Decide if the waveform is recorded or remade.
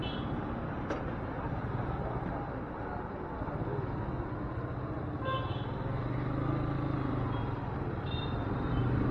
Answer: recorded